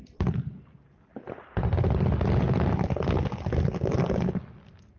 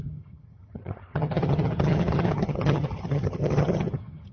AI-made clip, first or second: second